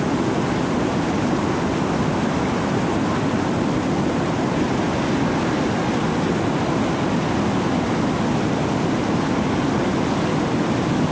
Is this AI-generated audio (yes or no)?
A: no